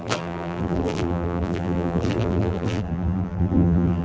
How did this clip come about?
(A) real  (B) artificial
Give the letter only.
B